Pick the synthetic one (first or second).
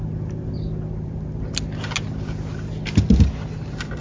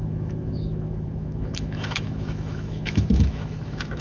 second